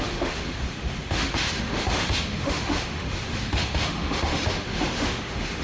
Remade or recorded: remade